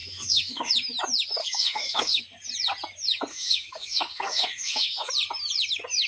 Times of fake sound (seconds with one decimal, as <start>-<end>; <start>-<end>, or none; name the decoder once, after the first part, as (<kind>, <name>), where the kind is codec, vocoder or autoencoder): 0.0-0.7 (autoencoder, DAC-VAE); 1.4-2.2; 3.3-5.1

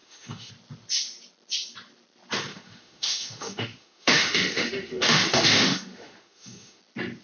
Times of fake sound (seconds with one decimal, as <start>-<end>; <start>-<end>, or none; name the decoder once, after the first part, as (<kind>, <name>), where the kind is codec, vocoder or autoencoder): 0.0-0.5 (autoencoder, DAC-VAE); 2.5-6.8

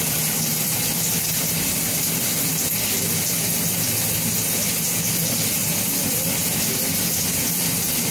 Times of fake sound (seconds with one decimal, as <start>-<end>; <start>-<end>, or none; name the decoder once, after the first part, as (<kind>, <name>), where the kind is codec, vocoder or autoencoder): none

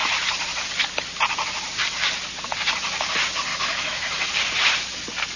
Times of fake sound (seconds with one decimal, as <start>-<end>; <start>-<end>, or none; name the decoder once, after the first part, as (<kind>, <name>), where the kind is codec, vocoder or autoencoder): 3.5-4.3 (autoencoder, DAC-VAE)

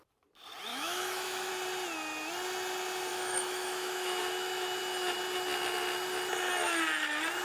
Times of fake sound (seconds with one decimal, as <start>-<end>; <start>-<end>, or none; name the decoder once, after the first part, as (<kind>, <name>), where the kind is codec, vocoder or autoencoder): 0.7-1.5 (autoencoder, DAC-VAE); 3.1-4.8

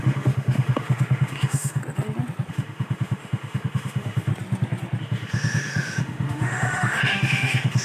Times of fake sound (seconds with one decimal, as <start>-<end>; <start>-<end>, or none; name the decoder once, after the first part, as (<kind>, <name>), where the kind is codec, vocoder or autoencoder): 0.0-1.8 (autoencoder, DAC-VAE); 2.5-4.3; 5.0-7.8

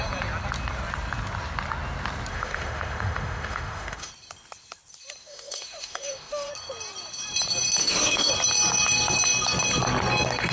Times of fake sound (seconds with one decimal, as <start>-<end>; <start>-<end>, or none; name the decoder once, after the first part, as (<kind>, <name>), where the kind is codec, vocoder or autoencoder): 2.3-4.1 (autoencoder, DAC-VAE); 5.2-6.5; 7.8-8.3

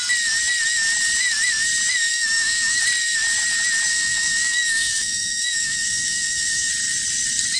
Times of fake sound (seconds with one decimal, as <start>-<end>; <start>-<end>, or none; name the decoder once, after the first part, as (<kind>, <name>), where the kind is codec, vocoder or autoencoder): 2.1-2.8 (autoencoder, DAC-VAE); 3.9-6.7